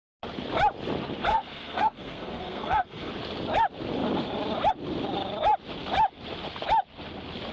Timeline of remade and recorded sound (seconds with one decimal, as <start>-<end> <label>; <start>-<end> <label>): 0.0-1.3 recorded; 1.3-3.1 remade; 3.1-7.5 recorded